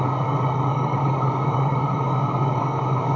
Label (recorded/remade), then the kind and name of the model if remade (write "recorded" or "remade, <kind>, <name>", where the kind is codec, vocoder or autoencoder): remade, codec, DAC